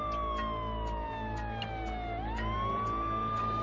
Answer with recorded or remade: recorded